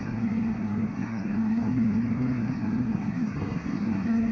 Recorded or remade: remade